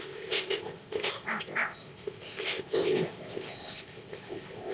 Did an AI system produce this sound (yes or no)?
yes